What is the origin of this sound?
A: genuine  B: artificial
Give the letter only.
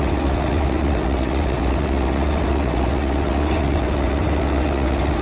B